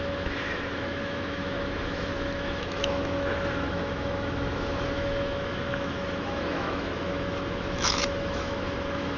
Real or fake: fake